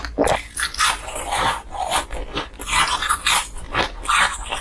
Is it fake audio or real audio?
real